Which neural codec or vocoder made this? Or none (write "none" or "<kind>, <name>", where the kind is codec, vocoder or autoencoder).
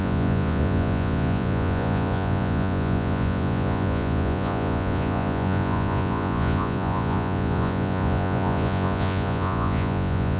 vocoder, Vocos